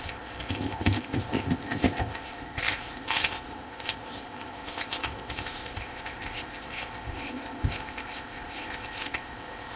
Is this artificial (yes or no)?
yes